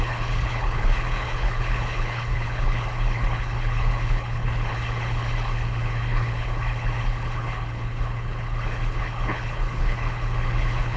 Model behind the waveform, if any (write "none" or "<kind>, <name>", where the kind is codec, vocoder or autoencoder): codec, HILCodec